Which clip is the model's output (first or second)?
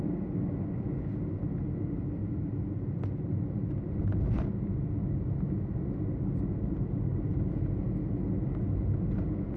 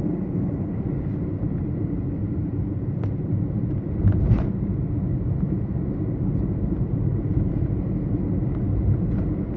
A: second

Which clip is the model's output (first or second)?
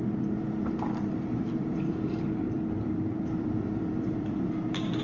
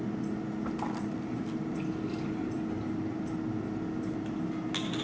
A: first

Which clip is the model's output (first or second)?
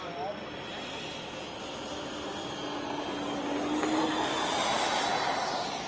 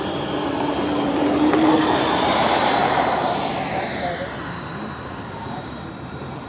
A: second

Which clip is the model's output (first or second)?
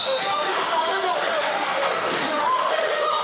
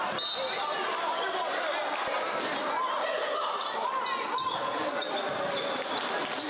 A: first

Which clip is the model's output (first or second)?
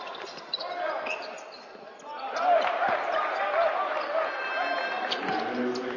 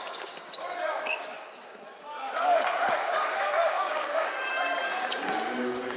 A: second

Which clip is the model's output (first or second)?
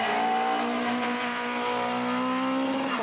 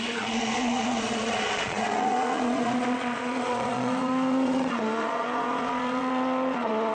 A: second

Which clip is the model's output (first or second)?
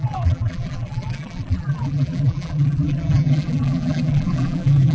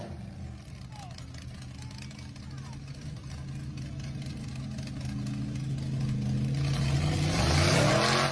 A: first